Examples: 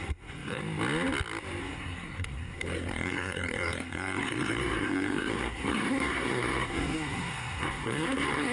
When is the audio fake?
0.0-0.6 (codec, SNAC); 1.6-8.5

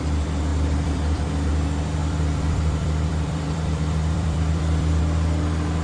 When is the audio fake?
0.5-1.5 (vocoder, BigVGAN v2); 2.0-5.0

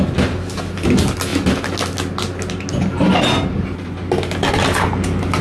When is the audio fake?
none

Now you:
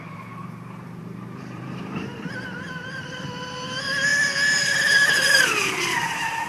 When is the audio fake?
0.0-4.1 (vocoder, BigVGAN v2); 4.6-6.5

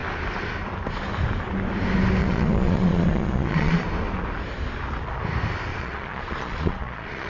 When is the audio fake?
2.2-3.8 (vocoder, Vocos); 5.7-7.3

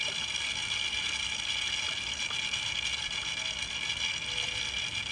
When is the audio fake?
none